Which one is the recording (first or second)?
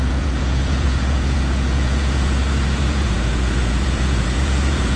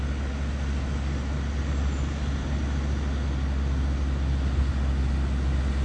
second